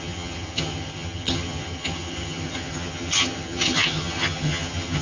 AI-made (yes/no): yes